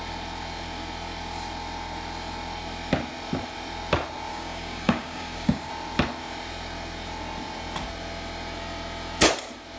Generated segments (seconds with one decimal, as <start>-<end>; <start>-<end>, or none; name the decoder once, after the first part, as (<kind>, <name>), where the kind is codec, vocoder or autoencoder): 4.3-5.7 (codec, DAC)

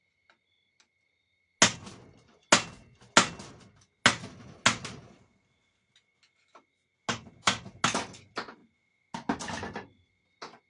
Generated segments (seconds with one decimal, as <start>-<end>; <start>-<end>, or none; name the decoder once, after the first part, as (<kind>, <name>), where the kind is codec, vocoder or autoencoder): none

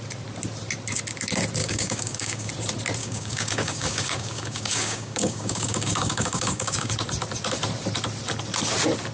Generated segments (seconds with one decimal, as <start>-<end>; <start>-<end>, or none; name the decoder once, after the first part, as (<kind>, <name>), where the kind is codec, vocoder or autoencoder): 1.6-2.5 (codec, DAC); 3.0-6.9